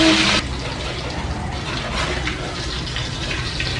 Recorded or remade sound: recorded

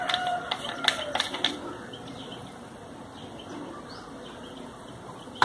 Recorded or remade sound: recorded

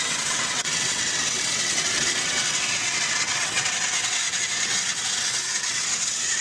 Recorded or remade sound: remade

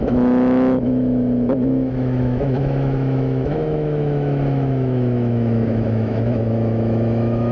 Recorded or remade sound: remade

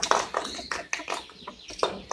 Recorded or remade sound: recorded